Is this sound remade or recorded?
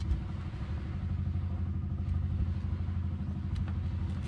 recorded